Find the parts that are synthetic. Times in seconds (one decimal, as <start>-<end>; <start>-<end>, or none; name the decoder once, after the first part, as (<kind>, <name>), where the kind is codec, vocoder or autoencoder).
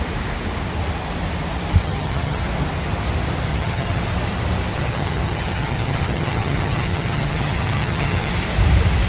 1.8-2.5 (vocoder, HiFi-GAN); 3.5-4.0; 4.7-8.3